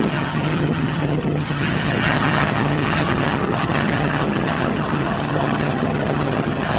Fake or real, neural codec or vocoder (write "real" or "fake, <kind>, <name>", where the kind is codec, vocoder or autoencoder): fake, vocoder, HiFi-GAN